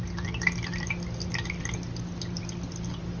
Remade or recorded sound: recorded